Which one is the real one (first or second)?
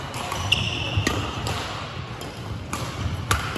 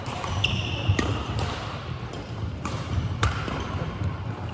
first